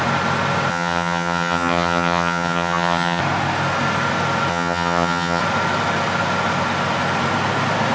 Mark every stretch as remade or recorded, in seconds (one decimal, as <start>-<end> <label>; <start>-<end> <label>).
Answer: 0.0-0.7 recorded; 0.7-3.2 remade; 3.2-4.5 recorded; 4.5-5.4 remade; 5.4-7.9 recorded